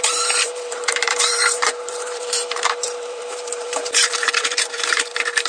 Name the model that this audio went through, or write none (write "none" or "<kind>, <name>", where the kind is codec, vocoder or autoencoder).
vocoder, BigVGAN v2